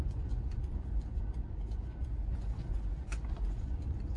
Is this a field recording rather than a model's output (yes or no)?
no